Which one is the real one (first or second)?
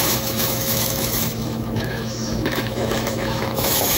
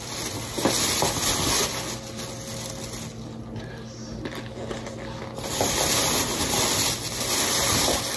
second